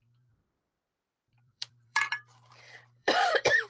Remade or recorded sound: remade